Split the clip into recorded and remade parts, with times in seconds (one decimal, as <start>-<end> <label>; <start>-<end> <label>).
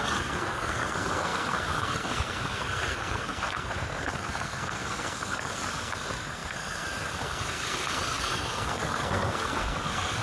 0.0-10.2 remade